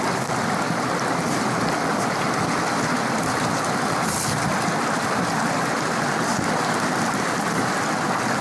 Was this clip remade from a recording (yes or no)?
no